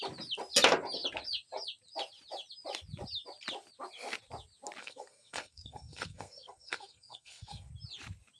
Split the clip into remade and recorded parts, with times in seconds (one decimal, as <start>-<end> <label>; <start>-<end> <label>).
0.0-4.8 recorded; 4.8-7.7 remade; 7.7-8.4 recorded